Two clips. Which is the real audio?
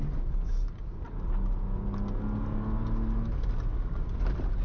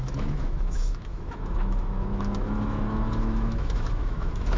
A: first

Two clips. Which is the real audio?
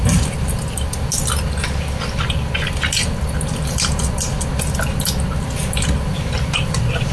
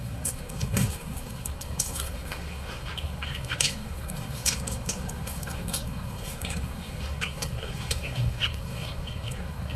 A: first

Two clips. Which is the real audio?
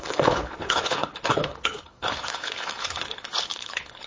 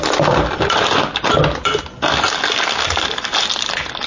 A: second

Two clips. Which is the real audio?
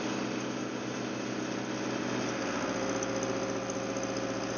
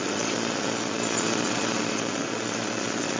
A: first